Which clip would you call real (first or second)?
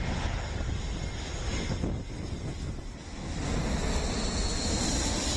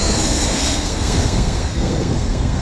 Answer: first